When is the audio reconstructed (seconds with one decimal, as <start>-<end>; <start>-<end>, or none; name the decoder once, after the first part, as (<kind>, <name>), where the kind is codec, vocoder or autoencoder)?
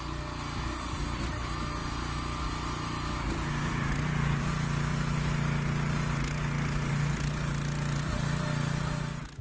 none